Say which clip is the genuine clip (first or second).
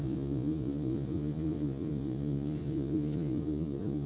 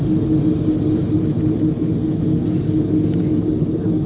second